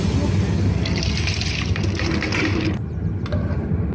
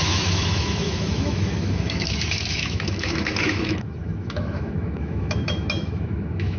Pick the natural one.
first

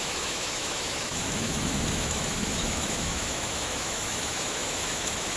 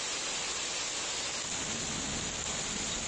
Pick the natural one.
second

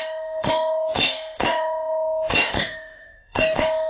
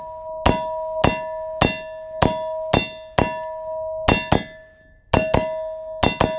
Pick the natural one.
second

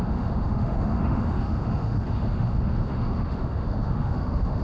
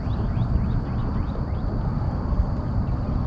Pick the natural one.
second